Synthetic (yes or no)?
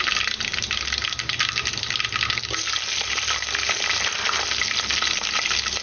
no